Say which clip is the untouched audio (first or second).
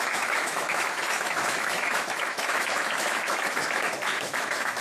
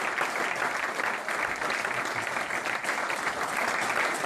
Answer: second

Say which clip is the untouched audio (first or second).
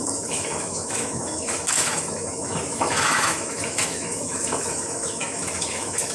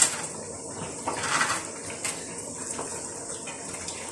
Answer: second